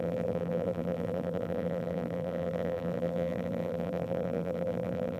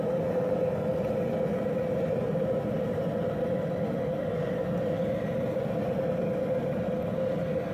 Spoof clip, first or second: first